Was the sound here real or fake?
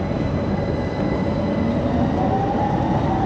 real